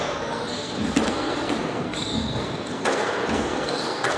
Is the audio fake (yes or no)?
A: yes